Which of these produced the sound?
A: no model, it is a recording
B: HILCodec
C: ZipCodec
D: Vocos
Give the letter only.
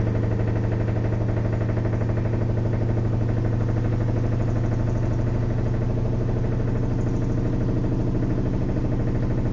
A